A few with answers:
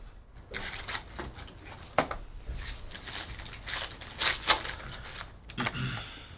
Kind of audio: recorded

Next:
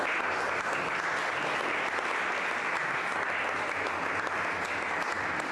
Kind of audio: recorded